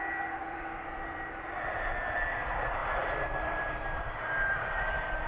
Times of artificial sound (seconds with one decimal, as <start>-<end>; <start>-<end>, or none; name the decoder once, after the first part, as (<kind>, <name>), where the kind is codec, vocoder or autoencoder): 0.4-2.0 (vocoder, BigVGAN v2); 2.8-5.3